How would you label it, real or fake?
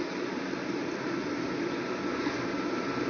real